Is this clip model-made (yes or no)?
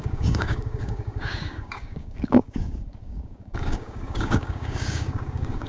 yes